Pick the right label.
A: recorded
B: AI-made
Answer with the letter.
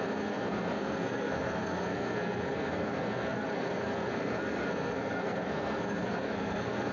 B